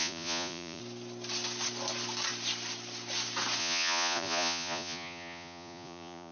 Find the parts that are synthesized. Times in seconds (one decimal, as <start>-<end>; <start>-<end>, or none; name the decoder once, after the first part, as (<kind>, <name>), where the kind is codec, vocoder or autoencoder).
0.0-0.8 (vocoder, Vocos); 3.6-6.3